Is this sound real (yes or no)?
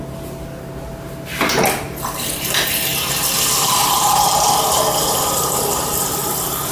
yes